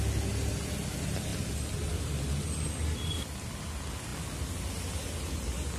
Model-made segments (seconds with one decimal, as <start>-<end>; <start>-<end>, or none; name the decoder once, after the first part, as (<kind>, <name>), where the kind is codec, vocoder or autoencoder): none